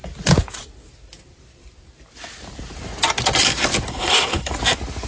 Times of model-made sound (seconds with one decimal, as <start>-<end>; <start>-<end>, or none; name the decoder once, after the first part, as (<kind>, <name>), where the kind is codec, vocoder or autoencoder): 3.9-4.5 (codec, HILCodec)

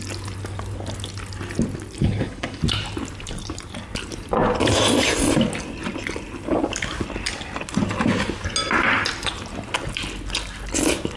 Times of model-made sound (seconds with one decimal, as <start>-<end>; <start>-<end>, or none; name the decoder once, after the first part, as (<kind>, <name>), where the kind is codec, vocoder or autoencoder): 2.0-2.6 (codec, HILCodec)

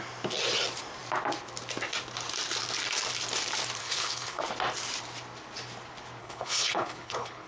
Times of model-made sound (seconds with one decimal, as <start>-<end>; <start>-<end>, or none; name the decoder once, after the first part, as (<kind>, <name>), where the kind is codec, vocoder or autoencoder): 3.8-4.4 (codec, HILCodec); 6.2-7.5

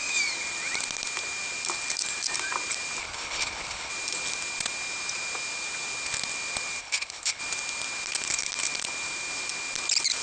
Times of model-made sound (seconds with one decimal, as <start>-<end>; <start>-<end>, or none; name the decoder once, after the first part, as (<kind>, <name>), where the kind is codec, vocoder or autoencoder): 3.0-3.9 (codec, HILCodec); 6.8-7.4

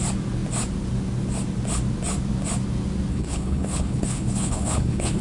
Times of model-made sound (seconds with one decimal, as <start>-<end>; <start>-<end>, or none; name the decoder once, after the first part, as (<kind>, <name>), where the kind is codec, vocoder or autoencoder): 3.1-5.2 (codec, HILCodec)

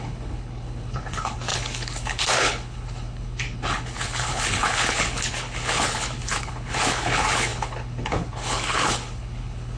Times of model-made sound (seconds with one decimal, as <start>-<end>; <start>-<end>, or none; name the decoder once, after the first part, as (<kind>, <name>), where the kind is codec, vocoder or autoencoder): 0.0-9.8 (codec, HILCodec)